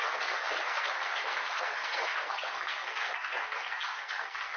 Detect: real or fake fake